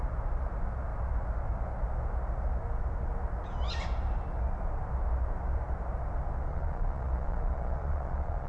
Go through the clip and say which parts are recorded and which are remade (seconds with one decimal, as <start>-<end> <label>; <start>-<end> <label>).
0.0-6.5 recorded; 6.5-8.5 remade

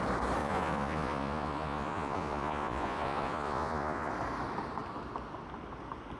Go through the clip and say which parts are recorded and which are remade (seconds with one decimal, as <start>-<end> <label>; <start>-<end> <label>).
0.0-0.4 recorded; 0.4-4.1 remade; 4.1-6.2 recorded

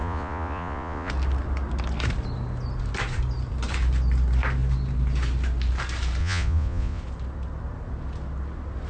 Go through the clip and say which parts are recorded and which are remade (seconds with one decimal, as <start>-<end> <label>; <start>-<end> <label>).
0.0-1.1 remade; 1.1-6.2 recorded; 6.2-7.0 remade; 7.0-8.9 recorded

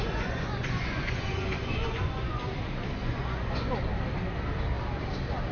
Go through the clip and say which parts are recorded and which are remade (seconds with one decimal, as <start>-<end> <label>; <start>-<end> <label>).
0.0-2.4 remade; 2.4-3.0 recorded; 3.0-3.7 remade; 3.7-5.5 recorded

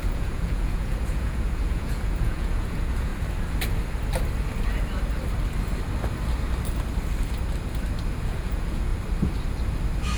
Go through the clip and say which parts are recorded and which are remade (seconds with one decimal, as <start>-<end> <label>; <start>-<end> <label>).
0.0-3.1 remade; 3.1-8.2 recorded; 8.2-8.9 remade; 8.9-10.2 recorded